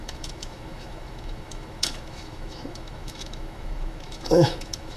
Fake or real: fake